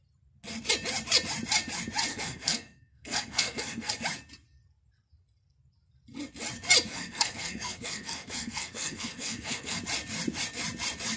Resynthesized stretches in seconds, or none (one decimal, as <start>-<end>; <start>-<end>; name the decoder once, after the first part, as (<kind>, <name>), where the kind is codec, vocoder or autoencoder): 2.1-3.9 (codec, SNAC); 6.9-9.8